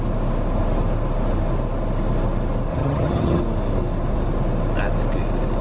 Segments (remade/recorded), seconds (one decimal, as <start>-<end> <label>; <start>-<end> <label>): 0.0-2.7 recorded; 2.7-3.4 remade; 3.4-5.6 recorded